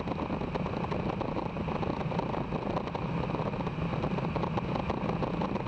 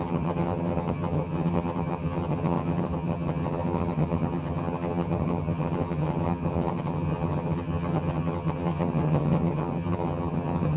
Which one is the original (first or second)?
first